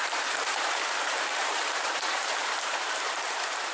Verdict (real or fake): fake